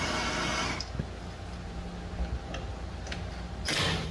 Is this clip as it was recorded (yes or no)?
yes